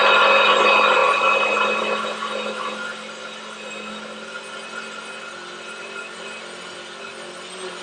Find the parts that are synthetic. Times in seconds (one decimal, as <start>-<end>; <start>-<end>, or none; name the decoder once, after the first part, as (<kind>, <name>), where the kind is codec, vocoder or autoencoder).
none